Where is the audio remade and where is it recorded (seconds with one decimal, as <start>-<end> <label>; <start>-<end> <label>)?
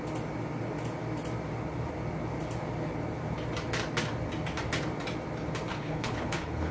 0.0-5.7 recorded; 5.7-6.7 remade